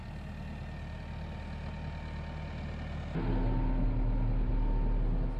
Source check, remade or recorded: recorded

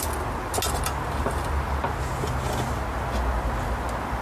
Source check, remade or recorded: recorded